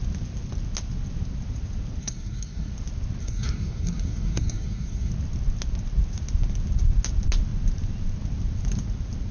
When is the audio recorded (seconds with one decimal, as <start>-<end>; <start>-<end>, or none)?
0.0-2.0; 2.7-3.2; 5.1-9.3